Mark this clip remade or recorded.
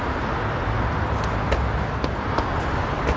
recorded